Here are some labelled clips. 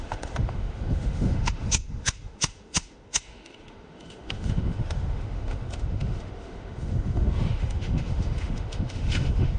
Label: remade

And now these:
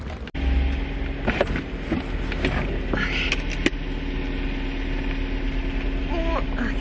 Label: recorded